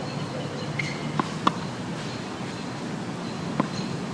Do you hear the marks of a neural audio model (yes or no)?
no